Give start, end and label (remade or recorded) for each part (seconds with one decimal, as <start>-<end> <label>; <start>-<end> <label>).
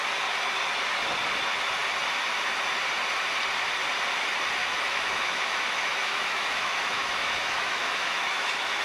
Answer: 0.0-4.6 recorded; 4.6-8.8 remade